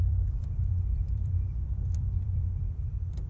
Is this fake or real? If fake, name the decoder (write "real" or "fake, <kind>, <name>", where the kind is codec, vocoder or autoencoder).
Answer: fake, vocoder, BigVGAN v2